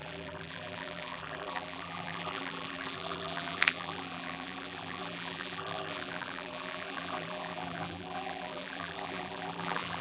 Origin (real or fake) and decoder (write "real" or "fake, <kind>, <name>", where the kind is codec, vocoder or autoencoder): fake, vocoder, BigVGAN v2